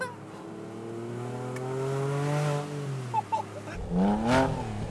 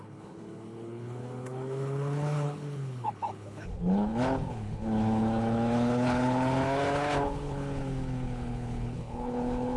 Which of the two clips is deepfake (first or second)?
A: second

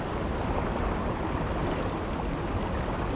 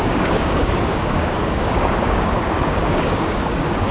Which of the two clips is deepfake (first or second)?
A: second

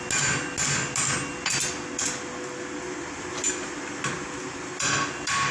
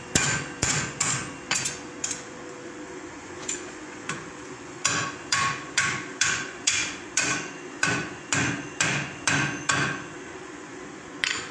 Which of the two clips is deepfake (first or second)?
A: second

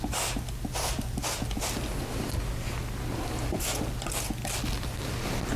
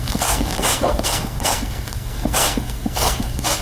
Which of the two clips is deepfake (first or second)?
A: second